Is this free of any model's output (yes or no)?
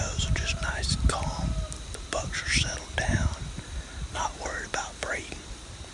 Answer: yes